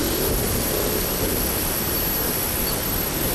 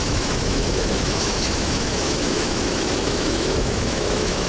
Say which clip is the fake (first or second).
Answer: second